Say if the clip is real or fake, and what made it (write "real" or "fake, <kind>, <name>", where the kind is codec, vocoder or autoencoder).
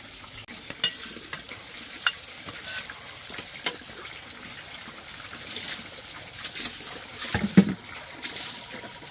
real